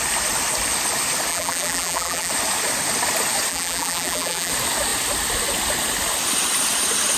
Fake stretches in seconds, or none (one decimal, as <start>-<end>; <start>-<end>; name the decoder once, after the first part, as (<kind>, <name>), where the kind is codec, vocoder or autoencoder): 1.3-2.3 (vocoder, BigVGAN v2); 3.5-4.5